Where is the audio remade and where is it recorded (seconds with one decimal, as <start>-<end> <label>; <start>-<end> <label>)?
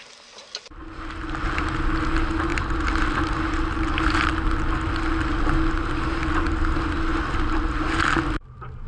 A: 0.0-8.9 recorded